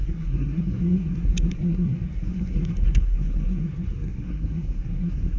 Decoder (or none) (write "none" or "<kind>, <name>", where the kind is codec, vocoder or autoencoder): codec, SNAC